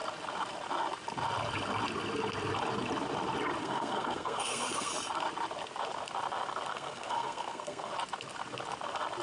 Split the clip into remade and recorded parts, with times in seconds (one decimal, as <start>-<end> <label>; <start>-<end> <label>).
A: 0.0-3.6 recorded; 3.6-4.9 remade; 4.9-6.7 recorded; 6.7-7.9 remade; 7.9-9.2 recorded